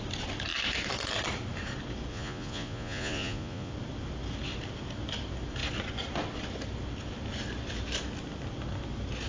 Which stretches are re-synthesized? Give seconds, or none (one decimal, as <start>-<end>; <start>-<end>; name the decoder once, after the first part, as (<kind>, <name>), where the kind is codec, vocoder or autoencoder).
2.1-3.7 (vocoder, Vocos)